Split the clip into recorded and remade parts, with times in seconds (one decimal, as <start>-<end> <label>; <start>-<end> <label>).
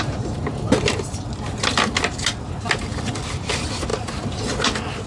0.0-5.1 recorded